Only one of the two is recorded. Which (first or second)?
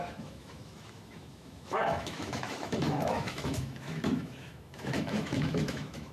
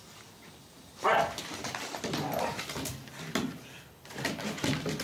second